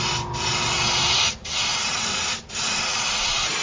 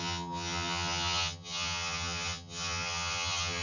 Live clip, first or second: first